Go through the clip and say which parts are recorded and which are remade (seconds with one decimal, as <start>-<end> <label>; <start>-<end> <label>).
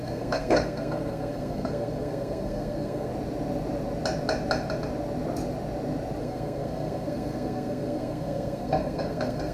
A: 0.0-3.1 remade; 3.1-6.2 recorded; 6.2-9.5 remade